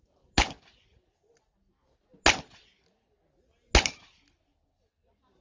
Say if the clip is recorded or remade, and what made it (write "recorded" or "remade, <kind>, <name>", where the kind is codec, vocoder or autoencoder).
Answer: recorded